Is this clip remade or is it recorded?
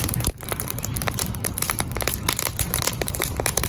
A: remade